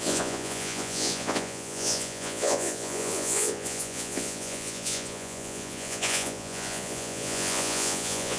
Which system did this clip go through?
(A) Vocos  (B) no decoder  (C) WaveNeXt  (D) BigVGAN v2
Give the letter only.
A